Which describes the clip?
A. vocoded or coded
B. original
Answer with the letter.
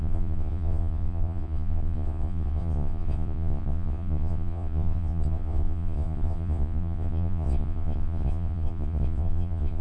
A